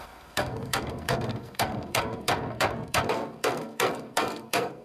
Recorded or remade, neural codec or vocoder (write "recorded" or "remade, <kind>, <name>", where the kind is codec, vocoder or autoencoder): remade, codec, SNAC